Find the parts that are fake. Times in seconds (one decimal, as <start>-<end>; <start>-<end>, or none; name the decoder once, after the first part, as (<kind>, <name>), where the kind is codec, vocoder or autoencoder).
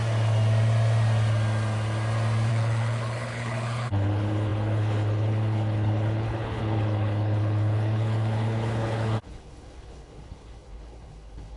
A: 2.5-11.6 (codec, HILCodec)